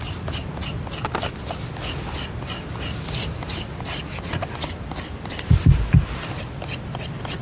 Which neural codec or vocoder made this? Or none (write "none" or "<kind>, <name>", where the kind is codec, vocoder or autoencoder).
none